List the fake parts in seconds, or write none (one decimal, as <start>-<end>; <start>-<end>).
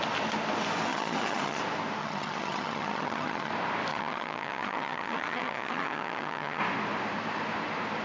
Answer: 0.9-1.6; 2.0-3.5; 3.9-6.6